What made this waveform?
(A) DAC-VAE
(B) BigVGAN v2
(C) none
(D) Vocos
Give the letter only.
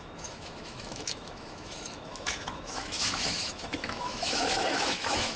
A